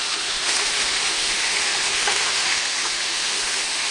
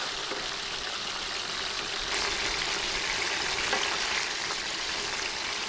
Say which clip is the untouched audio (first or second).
second